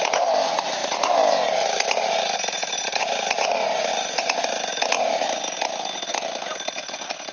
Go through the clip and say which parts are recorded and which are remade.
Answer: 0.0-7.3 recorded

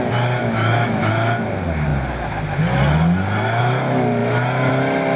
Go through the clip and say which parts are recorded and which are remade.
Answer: 0.0-0.4 recorded; 0.4-1.1 remade; 1.1-5.2 recorded

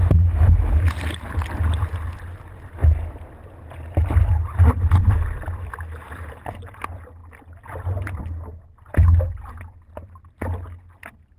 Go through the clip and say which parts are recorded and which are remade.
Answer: 0.0-11.4 recorded

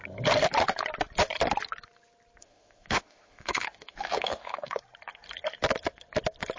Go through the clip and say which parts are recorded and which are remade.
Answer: 0.0-2.4 recorded; 2.4-4.8 remade; 4.8-6.6 recorded